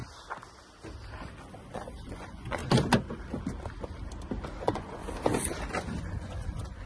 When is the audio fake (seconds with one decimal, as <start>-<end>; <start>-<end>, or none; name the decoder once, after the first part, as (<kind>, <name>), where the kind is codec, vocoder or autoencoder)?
1.5-2.6 (vocoder, Vocos); 4.4-5.0; 6.0-6.9